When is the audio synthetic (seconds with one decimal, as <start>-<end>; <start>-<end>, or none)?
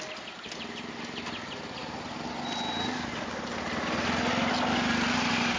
none